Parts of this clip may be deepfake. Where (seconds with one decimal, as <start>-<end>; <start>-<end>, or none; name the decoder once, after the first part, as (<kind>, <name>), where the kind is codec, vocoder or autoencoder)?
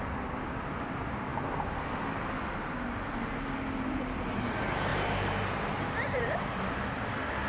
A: 4.9-7.0 (vocoder, BigVGAN v2)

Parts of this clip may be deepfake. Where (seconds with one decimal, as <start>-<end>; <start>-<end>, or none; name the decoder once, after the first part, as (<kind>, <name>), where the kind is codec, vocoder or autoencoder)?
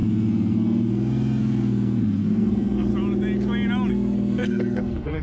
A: 0.0-2.9 (codec, SNAC); 3.9-5.2